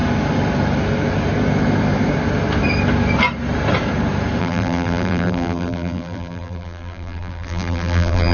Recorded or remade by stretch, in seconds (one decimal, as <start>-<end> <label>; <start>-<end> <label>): 0.0-4.4 recorded; 4.4-8.3 remade